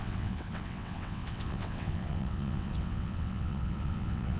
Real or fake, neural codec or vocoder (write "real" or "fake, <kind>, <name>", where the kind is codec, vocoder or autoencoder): fake, vocoder, WaveNeXt